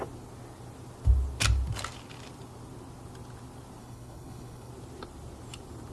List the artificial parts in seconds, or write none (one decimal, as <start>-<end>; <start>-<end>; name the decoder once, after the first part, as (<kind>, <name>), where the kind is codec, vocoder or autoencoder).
3.8-4.7 (codec, HILCodec)